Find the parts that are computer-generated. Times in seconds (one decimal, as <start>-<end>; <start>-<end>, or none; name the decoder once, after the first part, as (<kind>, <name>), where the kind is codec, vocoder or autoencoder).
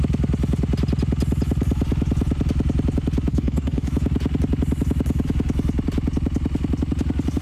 3.3-3.9 (codec, DAC)